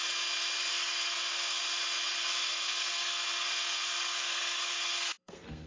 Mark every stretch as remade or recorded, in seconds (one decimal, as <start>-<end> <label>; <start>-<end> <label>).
0.0-0.7 recorded; 0.7-1.6 remade; 1.6-2.2 recorded; 2.2-5.7 remade